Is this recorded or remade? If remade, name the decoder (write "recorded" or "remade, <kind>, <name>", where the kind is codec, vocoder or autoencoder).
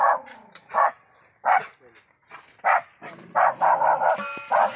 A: recorded